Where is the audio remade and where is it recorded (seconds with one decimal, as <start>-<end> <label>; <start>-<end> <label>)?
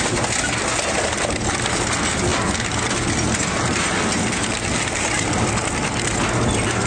0.0-6.9 recorded